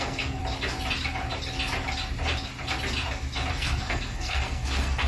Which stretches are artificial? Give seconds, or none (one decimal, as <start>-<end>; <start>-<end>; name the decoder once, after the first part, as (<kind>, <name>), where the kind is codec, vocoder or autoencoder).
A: 0.0-0.4 (codec, SNAC); 3.5-5.1